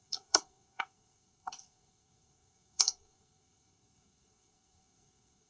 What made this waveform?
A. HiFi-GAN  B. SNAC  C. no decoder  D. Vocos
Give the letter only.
B